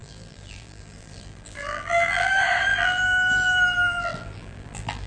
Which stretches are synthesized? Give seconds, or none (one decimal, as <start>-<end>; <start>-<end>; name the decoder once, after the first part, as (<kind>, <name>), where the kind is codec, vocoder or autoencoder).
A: 0.0-2.3 (vocoder, BigVGAN v2); 2.7-5.1